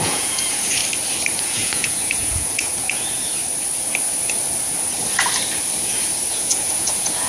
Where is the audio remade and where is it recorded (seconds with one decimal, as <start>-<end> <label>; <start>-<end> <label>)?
0.0-0.8 remade; 0.8-1.4 recorded; 1.4-3.4 remade; 3.4-6.3 recorded; 6.3-7.3 remade